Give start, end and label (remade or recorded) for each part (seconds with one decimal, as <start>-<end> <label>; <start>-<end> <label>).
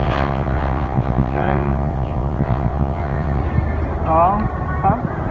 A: 0.0-3.4 remade; 3.4-5.3 recorded